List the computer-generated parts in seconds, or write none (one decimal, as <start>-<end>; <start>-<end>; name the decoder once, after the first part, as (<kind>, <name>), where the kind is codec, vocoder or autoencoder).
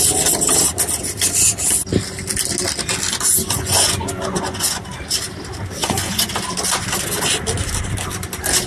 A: 3.4-4.8 (vocoder, Vocos); 5.8-6.3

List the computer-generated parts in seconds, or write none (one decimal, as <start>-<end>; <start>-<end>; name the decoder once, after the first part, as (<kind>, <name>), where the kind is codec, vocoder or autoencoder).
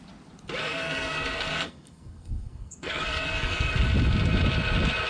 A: 0.6-3.7 (codec, SNAC)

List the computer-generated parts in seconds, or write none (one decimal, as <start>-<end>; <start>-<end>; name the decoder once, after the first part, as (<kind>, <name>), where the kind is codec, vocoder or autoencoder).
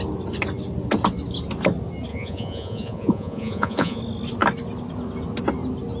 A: 2.1-4.0 (vocoder, Vocos)